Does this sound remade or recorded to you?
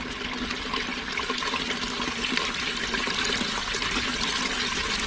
recorded